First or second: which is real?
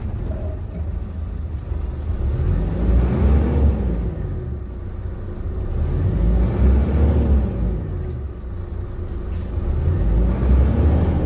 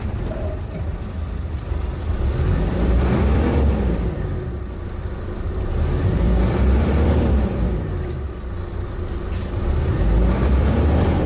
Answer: first